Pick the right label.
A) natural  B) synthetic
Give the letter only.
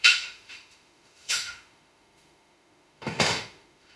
B